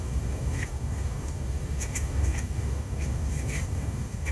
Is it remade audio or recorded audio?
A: remade